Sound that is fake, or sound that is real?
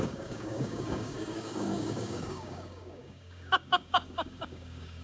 fake